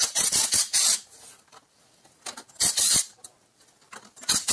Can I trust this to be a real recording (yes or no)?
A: yes